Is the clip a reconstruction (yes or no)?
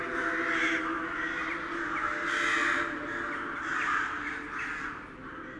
no